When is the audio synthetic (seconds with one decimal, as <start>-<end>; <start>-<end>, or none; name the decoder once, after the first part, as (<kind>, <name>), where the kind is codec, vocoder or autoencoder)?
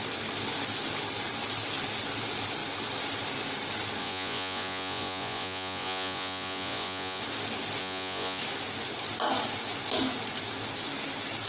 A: 4.0-7.2 (vocoder, Vocos); 7.8-8.4